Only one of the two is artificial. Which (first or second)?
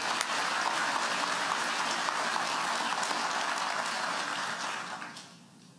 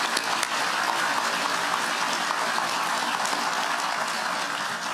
first